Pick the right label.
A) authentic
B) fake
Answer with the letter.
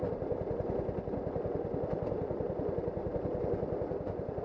A